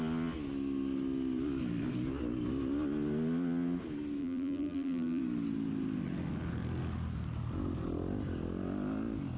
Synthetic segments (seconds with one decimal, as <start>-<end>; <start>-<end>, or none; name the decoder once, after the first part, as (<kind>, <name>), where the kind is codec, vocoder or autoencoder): 4.2-5.2 (vocoder, BigVGAN v2)